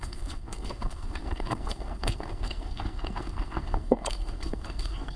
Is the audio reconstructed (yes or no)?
yes